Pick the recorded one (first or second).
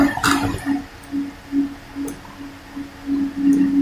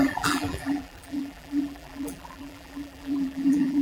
first